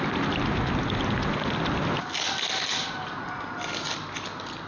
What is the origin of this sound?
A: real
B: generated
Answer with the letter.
A